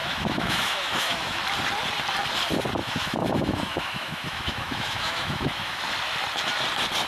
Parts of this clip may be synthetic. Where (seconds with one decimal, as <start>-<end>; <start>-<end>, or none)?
0.0-1.4; 2.8-5.8